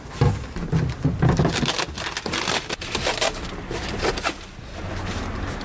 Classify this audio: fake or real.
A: real